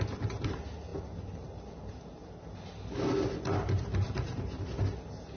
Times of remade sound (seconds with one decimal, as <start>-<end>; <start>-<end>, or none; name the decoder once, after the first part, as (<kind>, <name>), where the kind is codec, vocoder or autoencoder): none